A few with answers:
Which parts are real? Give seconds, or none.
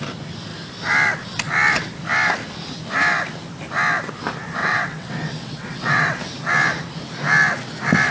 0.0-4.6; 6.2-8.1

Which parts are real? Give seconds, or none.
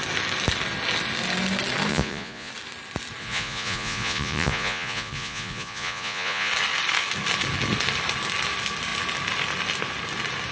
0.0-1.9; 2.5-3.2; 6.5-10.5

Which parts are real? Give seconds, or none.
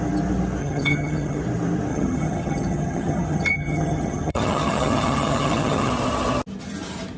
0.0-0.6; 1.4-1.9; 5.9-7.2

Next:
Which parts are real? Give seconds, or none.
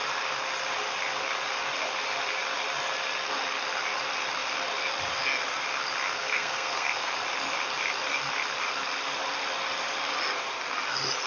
0.0-6.1; 7.1-11.3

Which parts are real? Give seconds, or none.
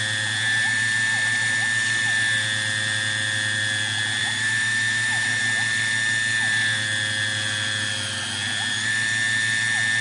0.0-4.2; 5.4-10.0